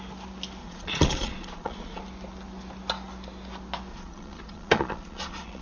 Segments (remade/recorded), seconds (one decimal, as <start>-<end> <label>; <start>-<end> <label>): 0.0-0.6 recorded; 0.6-2.0 remade; 2.0-3.9 recorded; 3.9-5.6 remade